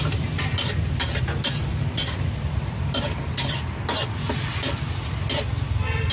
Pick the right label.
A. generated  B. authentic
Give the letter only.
B